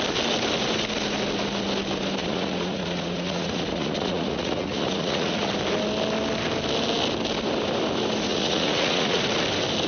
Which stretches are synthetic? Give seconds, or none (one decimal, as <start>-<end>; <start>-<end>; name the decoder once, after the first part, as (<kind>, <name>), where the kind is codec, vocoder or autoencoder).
2.2-5.5 (vocoder, Vocos); 8.3-9.2